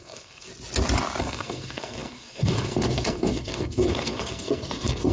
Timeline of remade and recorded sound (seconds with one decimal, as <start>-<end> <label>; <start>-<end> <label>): 0.0-0.5 remade; 0.5-1.2 recorded; 1.2-5.1 remade